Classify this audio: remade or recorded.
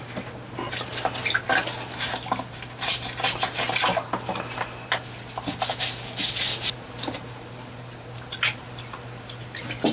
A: recorded